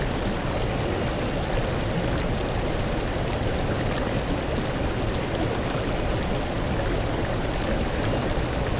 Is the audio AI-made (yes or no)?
no